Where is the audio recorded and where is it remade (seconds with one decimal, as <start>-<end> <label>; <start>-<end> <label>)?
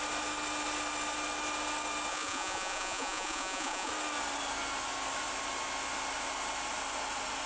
0.0-2.1 recorded; 2.1-3.9 remade; 3.9-7.5 recorded